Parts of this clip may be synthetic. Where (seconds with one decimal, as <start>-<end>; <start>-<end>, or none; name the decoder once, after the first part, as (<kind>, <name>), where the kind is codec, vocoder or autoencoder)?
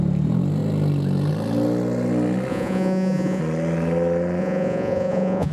2.5-3.4 (vocoder, Vocos); 4.4-5.5